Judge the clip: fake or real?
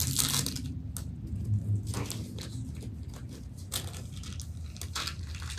real